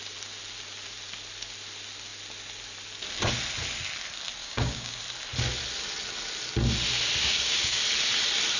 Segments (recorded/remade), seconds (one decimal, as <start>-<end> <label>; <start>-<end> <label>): 0.0-4.4 recorded; 4.4-5.0 remade; 5.0-7.2 recorded; 7.2-7.8 remade; 7.8-8.6 recorded